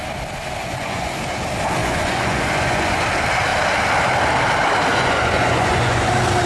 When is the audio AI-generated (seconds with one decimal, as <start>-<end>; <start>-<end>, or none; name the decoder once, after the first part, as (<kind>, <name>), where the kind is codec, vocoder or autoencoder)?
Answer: 0.6-1.1 (vocoder, Vocos); 1.8-3.0; 4.9-6.1